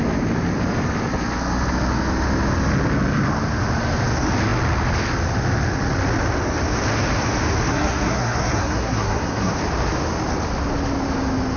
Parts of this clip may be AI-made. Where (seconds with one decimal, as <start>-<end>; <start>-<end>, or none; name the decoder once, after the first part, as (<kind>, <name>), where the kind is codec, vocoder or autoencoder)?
7.7-9.5 (codec, SNAC)